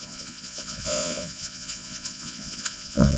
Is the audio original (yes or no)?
no